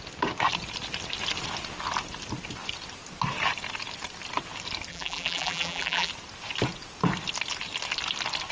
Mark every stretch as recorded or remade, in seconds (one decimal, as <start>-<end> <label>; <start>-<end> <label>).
0.0-4.9 recorded; 4.9-6.1 remade; 6.1-8.5 recorded